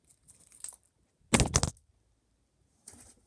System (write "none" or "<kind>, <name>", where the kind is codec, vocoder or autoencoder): none